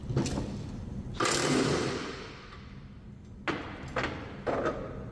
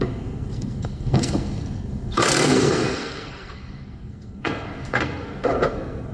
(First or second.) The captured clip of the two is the first